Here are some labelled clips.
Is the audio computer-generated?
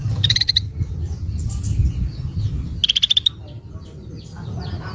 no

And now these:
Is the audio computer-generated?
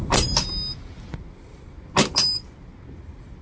no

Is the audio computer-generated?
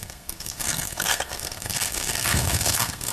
yes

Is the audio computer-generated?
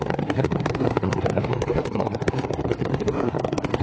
yes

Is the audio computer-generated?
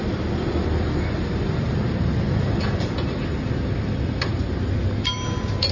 no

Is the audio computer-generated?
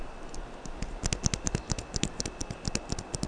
no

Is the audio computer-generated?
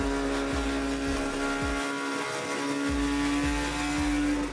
no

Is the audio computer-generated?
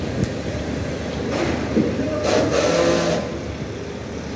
no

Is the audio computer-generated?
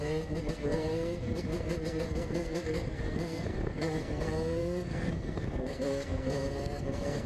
yes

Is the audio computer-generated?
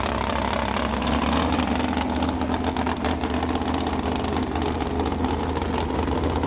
no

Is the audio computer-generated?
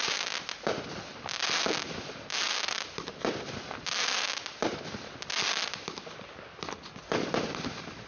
no